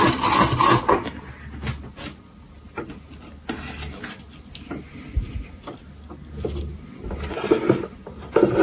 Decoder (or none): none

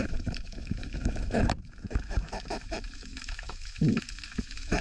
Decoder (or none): autoencoder, DAC-VAE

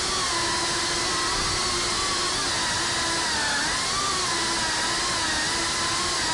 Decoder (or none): none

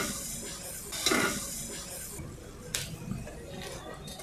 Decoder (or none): none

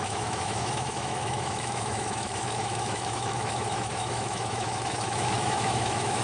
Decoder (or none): autoencoder, DAC-VAE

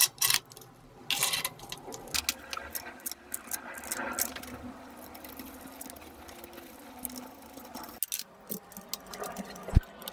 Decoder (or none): none